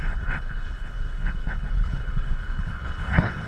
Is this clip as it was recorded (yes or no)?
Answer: no